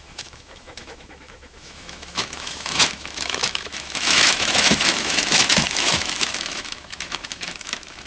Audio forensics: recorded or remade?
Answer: remade